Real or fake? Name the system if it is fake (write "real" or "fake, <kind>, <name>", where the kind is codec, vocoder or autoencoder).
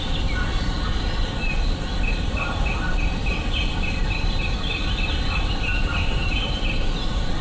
real